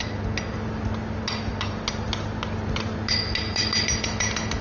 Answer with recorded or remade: recorded